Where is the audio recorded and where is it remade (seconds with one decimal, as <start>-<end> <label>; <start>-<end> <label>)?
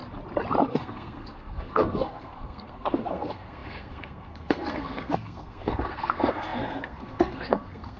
0.0-0.7 recorded; 0.7-8.0 remade